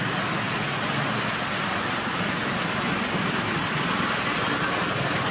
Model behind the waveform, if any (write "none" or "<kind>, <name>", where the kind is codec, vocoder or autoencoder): none